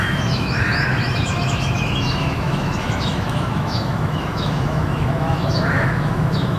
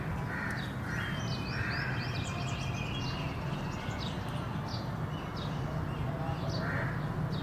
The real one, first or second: second